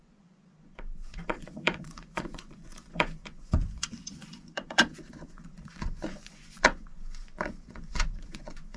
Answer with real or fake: fake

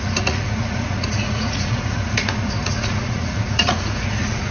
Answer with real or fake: fake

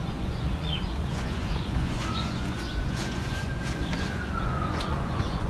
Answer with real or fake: fake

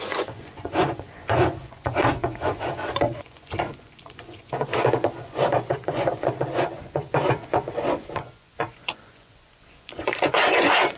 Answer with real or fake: fake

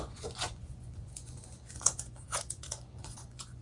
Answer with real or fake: fake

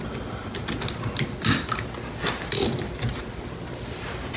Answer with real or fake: real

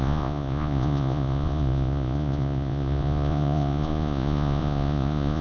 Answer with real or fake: fake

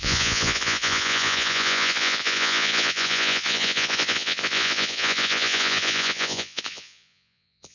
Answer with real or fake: fake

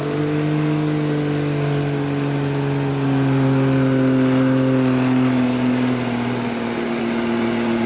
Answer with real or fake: real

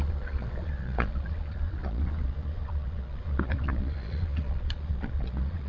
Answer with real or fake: fake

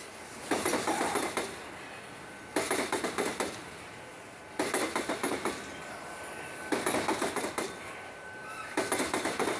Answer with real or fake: real